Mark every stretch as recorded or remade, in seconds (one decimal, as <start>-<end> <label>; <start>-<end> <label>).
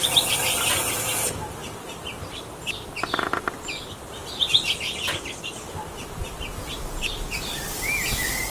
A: 0.0-8.5 recorded